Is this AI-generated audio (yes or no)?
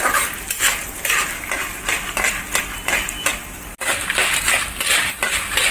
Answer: no